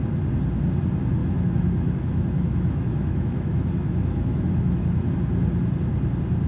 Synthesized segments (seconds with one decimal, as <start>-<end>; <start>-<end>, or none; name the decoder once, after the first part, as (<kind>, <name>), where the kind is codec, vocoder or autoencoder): 1.2-5.1 (autoencoder, DAC-VAE)

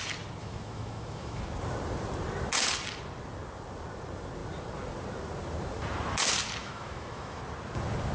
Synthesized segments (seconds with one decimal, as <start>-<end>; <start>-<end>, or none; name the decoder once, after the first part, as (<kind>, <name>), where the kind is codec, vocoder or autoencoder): 0.4-1.4 (autoencoder, DAC-VAE); 6.6-7.4

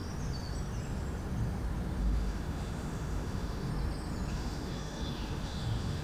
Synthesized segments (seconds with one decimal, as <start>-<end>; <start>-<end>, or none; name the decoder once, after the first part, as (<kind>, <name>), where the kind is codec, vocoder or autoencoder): 2.0-3.7 (autoencoder, DAC-VAE); 4.3-6.0

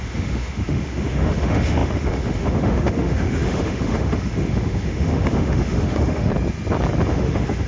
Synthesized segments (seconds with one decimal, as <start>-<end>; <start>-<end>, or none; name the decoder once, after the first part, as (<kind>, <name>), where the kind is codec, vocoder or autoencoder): 0.0-6.3 (autoencoder, DAC-VAE); 7.1-7.7

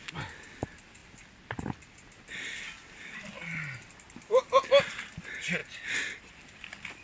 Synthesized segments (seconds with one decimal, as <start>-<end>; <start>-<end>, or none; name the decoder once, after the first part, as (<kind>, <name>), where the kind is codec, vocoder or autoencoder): none

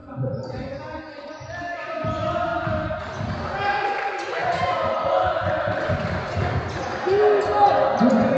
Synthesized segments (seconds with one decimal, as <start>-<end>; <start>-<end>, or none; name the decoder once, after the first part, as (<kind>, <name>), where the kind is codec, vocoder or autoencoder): none

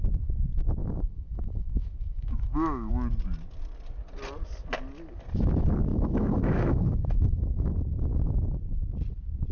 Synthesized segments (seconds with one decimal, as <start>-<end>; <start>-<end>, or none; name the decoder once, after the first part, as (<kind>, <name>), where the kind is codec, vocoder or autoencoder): 0.8-2.9 (autoencoder, DAC-VAE); 5.9-7.7